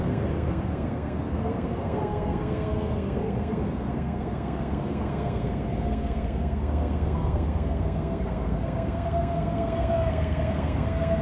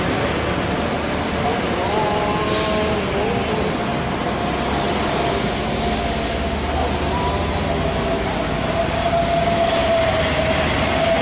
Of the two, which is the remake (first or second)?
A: first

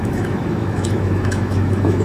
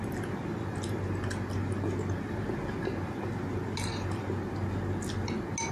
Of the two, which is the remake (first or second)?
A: first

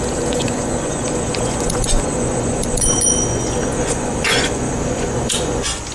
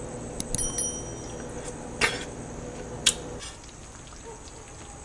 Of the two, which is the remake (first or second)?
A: first